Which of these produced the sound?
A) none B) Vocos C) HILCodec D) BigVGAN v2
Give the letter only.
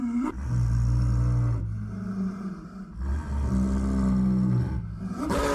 A